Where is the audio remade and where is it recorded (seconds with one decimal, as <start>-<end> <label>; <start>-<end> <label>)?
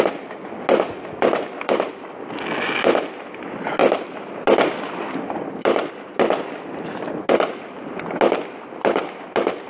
0.0-9.7 recorded